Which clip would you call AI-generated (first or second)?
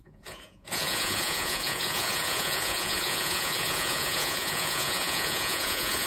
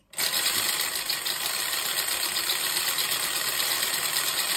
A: first